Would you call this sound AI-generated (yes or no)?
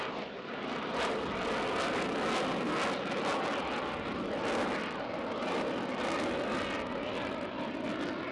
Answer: no